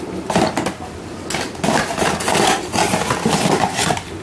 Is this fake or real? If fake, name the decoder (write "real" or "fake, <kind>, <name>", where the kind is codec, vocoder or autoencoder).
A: real